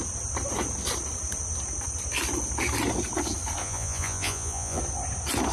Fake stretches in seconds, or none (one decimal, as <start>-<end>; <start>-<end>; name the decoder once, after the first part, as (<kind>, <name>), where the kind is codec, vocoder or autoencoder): 3.6-4.8 (vocoder, Vocos)